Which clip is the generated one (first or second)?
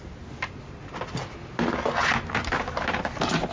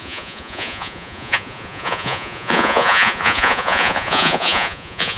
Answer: second